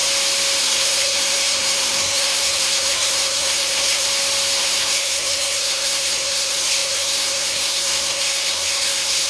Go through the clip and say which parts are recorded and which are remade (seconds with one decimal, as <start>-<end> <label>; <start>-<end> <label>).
0.0-0.6 recorded; 0.6-4.1 remade; 4.1-4.6 recorded; 4.6-9.3 remade